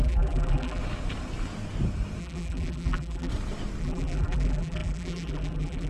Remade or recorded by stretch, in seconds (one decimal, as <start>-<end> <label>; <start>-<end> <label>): 0.0-0.8 remade; 0.8-2.2 recorded; 2.2-3.3 remade; 3.3-3.8 recorded; 3.8-5.9 remade